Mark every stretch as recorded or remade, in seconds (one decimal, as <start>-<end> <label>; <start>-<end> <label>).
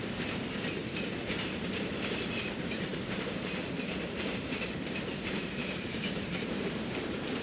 0.0-0.8 remade; 0.8-2.4 recorded; 2.4-7.4 remade